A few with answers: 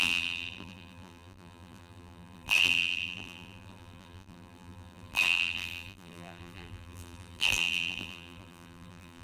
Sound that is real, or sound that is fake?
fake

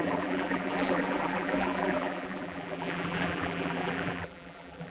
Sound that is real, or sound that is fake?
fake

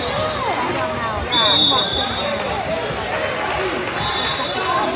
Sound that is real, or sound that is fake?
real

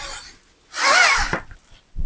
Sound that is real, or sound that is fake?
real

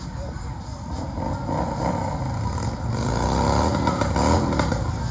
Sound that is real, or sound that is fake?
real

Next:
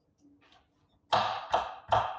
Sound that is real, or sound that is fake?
real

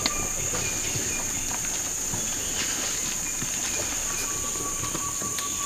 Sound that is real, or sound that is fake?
real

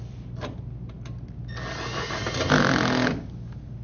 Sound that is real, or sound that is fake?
real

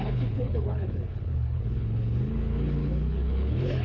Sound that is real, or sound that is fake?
fake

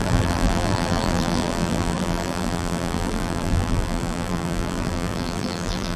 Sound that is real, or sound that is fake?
fake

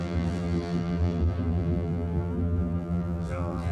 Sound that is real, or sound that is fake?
fake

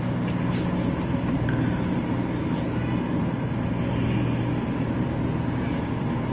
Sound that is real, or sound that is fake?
real